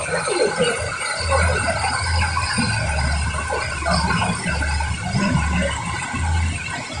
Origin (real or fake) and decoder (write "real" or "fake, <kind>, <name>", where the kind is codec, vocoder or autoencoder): real